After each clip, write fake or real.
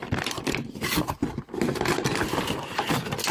fake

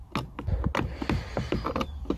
real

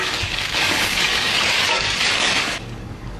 fake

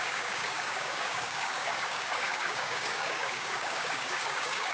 fake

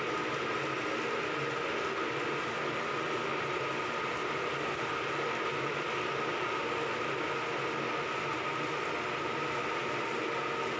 real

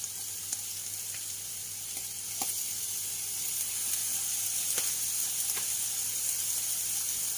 real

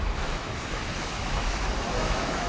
fake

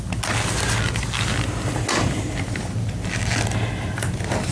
real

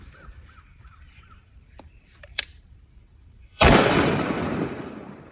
fake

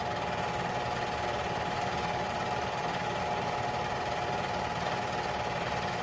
real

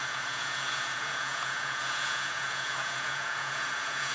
fake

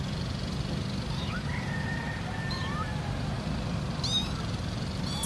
real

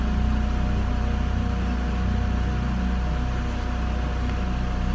real